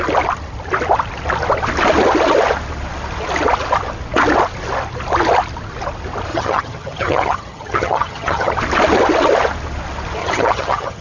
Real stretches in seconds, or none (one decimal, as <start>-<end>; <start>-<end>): 0.0-6.3; 8.5-10.2